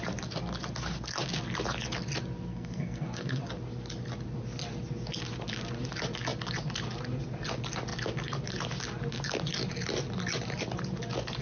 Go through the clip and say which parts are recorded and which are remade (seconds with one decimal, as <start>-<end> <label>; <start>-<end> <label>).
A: 0.0-2.5 recorded; 2.5-3.4 remade; 3.4-11.4 recorded